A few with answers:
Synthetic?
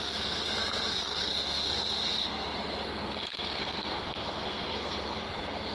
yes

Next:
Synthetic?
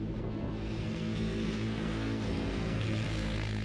yes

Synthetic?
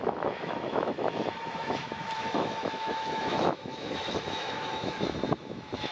yes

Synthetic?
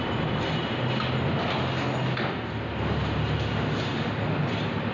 no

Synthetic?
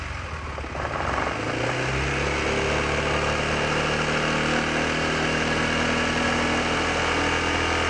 no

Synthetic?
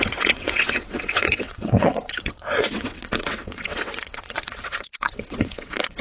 yes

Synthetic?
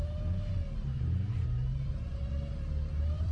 no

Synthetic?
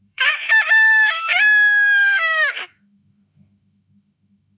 yes